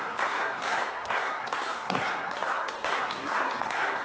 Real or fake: fake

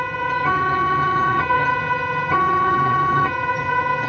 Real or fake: fake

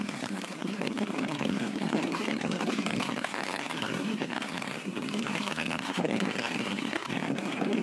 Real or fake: fake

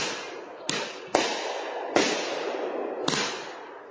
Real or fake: real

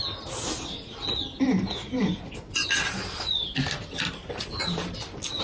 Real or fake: real